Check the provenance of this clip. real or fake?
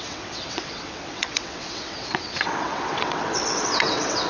fake